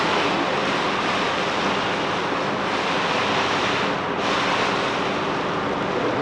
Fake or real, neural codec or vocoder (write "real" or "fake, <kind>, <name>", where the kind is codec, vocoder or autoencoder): real